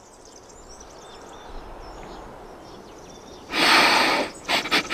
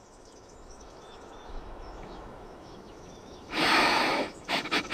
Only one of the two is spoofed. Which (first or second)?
second